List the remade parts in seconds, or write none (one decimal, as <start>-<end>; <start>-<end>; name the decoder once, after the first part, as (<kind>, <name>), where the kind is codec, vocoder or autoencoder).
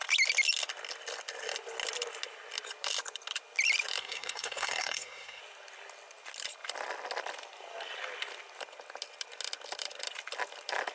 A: 4.0-5.4 (codec, SNAC)